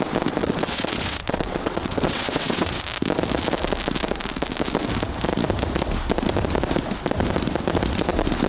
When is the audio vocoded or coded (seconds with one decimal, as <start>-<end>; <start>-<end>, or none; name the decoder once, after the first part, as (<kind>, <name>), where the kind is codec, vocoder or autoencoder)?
0.4-2.8 (vocoder, WaveNeXt)